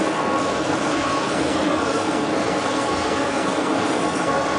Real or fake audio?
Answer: fake